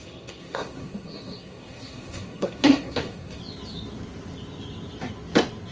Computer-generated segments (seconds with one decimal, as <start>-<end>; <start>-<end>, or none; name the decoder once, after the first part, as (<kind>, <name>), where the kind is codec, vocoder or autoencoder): 0.0-3.4 (codec, SNAC)